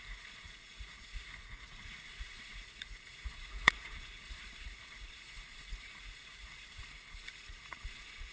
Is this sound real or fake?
fake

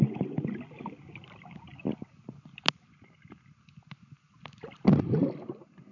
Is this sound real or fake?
real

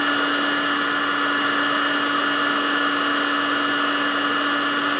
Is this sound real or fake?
real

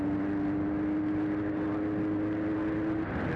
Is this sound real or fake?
real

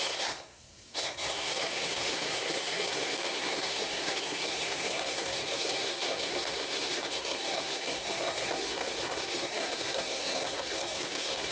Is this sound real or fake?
fake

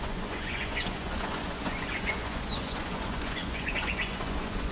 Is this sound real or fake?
fake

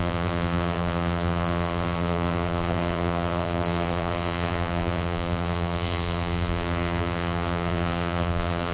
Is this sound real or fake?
fake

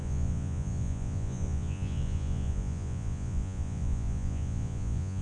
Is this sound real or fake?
fake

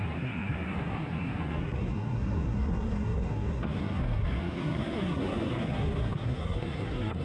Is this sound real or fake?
fake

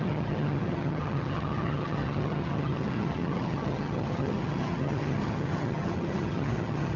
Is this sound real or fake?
fake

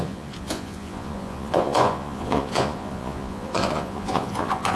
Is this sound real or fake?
fake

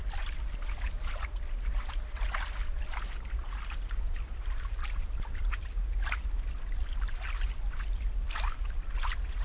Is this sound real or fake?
real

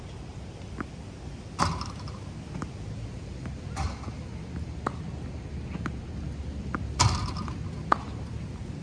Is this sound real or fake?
real